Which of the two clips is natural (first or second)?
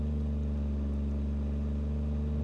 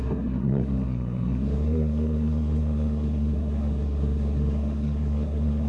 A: first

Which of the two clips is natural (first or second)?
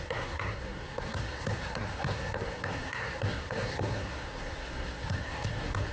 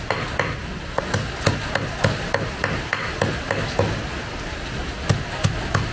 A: second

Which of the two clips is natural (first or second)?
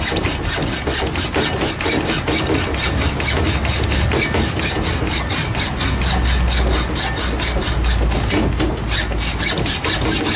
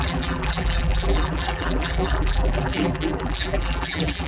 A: first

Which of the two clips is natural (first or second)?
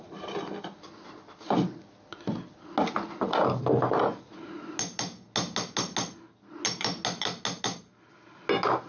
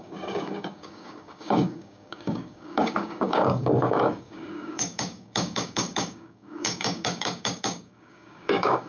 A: first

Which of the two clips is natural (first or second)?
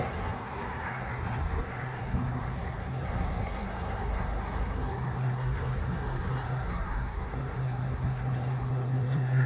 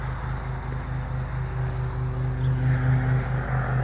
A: second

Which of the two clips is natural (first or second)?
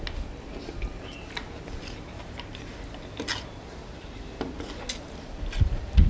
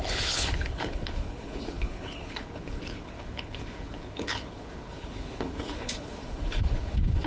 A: first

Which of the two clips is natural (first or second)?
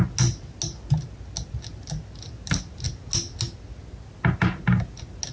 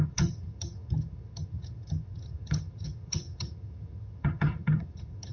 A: first